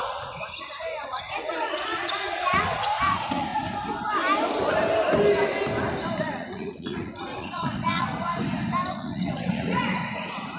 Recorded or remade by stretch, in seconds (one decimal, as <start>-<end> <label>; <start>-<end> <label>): 0.0-3.5 remade; 3.5-6.2 recorded; 6.2-8.3 remade; 8.3-8.9 recorded; 8.9-10.6 remade

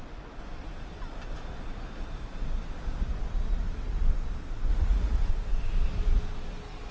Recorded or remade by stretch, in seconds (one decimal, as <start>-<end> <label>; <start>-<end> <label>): 0.0-4.7 recorded; 4.7-5.3 remade; 5.3-6.9 recorded

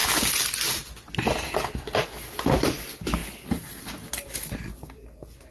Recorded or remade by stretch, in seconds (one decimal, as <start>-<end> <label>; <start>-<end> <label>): 0.0-5.5 recorded

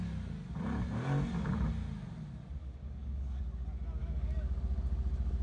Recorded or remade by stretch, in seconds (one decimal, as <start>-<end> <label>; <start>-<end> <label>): 0.0-2.6 recorded; 2.6-3.4 remade; 3.4-4.0 recorded; 4.0-4.6 remade; 4.6-5.4 recorded

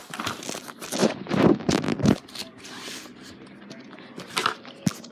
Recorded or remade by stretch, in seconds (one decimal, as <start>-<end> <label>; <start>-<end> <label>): 0.0-1.0 recorded; 1.0-3.7 remade; 3.7-5.1 recorded

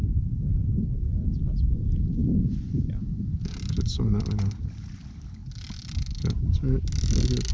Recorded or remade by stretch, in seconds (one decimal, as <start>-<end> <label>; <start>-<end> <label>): 0.0-7.5 recorded

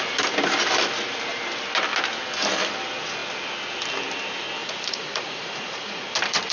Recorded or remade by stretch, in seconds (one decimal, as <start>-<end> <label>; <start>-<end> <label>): 0.0-4.6 recorded; 4.6-6.0 remade; 6.0-6.5 recorded